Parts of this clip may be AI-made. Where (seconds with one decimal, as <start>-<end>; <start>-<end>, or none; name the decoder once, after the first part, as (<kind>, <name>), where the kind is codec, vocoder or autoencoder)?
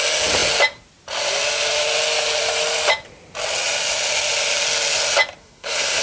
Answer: 5.4-6.0 (codec, SNAC)